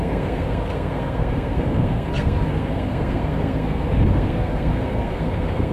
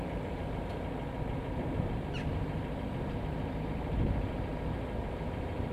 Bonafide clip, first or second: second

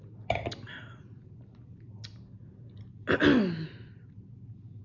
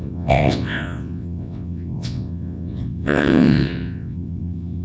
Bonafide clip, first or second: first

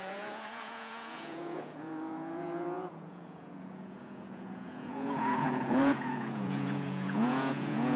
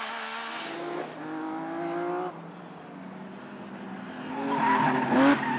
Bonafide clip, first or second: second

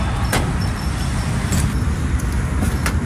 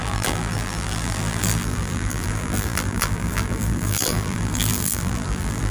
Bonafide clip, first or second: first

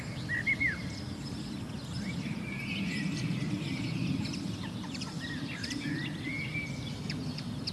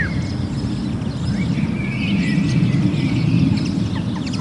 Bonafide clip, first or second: second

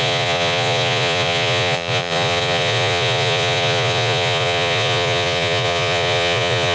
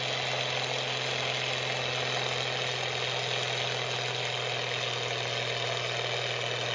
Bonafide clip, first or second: second